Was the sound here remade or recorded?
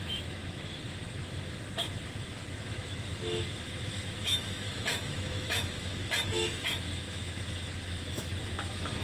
remade